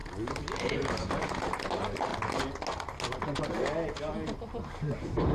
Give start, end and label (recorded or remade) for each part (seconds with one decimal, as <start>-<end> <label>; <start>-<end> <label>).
0.0-2.1 remade; 2.1-4.7 recorded; 4.7-5.3 remade

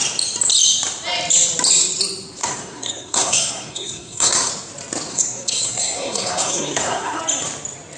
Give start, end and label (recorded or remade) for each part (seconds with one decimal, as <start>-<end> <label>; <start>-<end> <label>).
0.0-2.4 recorded; 2.4-4.5 remade; 4.5-5.1 recorded; 5.1-7.2 remade; 7.2-8.0 recorded

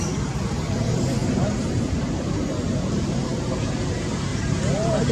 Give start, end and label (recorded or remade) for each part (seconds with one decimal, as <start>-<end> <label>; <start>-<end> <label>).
0.0-1.2 recorded; 1.2-2.1 remade; 2.1-4.3 recorded; 4.3-5.1 remade

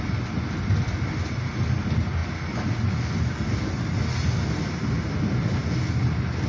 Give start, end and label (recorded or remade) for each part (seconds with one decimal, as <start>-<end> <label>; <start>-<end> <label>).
0.0-6.5 recorded

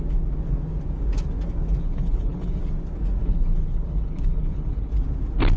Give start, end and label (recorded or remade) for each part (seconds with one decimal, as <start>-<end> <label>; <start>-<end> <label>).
0.0-1.8 recorded; 1.8-2.6 remade; 2.6-3.2 recorded; 3.2-4.9 remade; 4.9-5.6 recorded